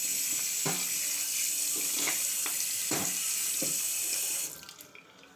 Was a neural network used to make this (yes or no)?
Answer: no